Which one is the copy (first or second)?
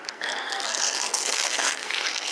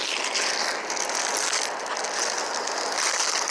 first